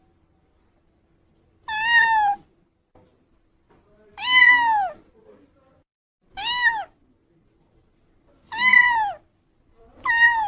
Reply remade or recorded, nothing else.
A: recorded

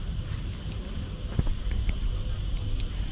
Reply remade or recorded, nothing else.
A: recorded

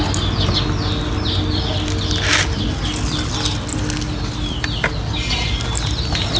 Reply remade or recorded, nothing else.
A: recorded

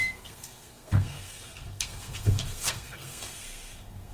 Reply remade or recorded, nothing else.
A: remade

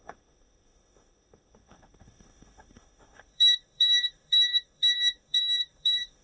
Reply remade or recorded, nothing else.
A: remade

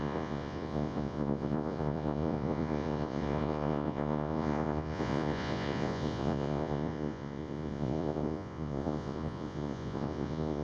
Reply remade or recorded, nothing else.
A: remade